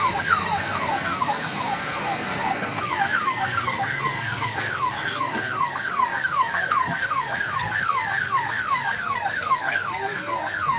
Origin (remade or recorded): remade